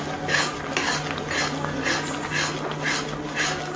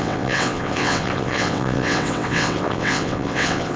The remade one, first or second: second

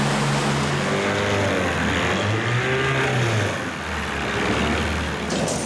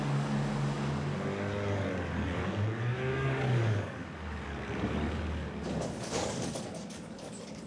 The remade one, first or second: second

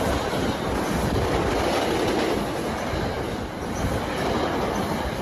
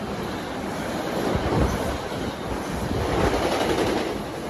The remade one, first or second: second